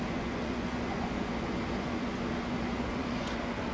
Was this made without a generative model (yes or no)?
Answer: no